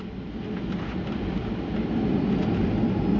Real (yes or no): yes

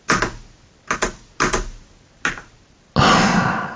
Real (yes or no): yes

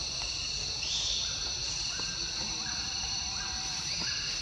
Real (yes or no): yes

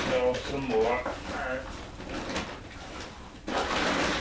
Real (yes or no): yes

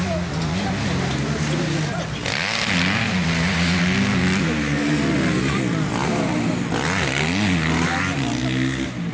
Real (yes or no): yes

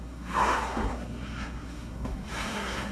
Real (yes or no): no